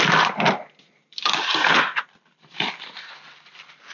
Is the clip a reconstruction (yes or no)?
no